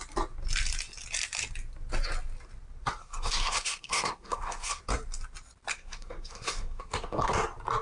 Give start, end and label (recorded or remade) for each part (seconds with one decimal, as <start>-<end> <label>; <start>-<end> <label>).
0.0-3.0 recorded; 3.0-4.8 remade; 4.8-5.7 recorded; 5.7-7.3 remade; 7.3-7.8 recorded